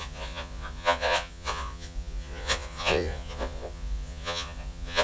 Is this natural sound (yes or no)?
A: no